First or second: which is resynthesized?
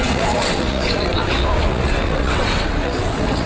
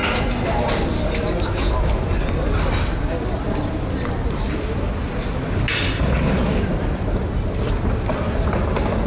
first